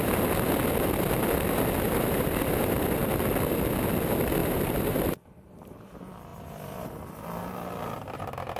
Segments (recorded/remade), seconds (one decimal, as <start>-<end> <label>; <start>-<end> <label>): 0.0-1.9 recorded; 1.9-2.6 remade; 2.6-4.4 recorded; 4.4-5.5 remade; 5.5-8.6 recorded